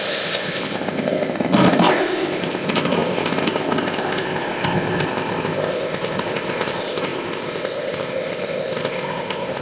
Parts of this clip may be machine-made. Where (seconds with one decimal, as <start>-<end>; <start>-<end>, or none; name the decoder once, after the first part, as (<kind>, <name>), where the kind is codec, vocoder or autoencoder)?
0.0-9.6 (codec, ZipCodec)